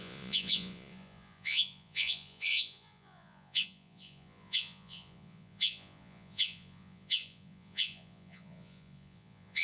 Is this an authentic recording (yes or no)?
no